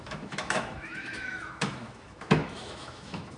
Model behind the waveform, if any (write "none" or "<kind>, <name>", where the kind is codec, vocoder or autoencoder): autoencoder, DAC-VAE